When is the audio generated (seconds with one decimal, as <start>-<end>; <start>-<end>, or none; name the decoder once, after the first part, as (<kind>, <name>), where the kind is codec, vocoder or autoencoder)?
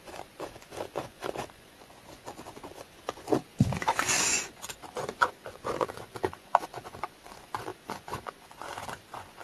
0.0-9.4 (vocoder, Vocos)